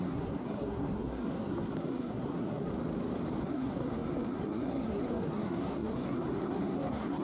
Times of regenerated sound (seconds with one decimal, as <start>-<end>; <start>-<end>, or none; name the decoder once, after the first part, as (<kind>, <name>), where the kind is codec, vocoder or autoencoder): 0.0-2.7 (codec, SNAC); 3.4-7.2